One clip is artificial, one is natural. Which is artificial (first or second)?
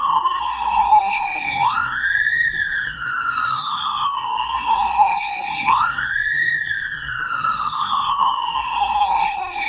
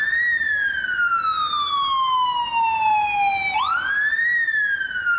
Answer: first